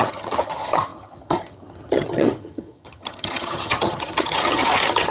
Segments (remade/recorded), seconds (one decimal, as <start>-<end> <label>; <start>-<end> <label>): 0.0-5.1 remade